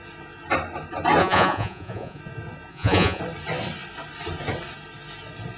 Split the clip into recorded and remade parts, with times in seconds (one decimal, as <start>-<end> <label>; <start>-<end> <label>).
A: 0.0-1.2 recorded; 1.2-2.2 remade; 2.2-2.7 recorded; 2.7-3.2 remade; 3.2-5.6 recorded